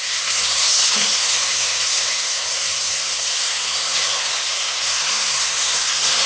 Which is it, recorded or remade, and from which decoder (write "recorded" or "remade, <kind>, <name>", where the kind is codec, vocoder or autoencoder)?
remade, codec, SNAC